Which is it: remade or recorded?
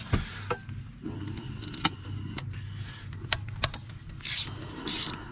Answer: recorded